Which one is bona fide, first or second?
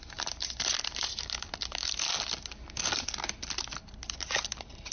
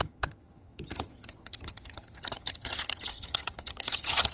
first